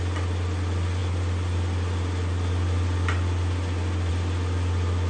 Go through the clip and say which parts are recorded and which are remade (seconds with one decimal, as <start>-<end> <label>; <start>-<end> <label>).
0.0-5.1 recorded